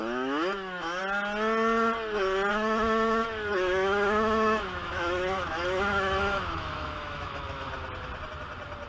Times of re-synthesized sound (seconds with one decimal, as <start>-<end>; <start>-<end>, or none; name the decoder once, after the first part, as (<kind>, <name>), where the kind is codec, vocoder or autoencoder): 0.0-1.0 (autoencoder, DAC-VAE); 2.5-7.7